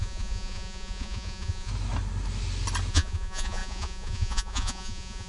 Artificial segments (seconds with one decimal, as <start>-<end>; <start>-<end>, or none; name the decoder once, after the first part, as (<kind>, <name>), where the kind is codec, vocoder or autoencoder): 0.0-1.7 (vocoder, Vocos); 2.9-5.3